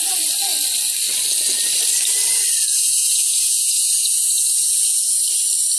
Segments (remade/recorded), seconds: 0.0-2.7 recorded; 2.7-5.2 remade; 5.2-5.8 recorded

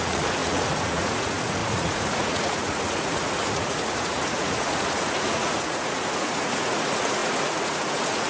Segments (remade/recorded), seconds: 0.0-8.3 remade

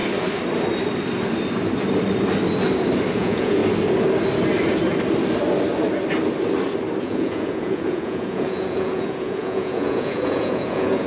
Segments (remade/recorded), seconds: 0.0-3.1 recorded; 3.1-3.6 remade; 3.6-7.0 recorded; 7.0-11.1 remade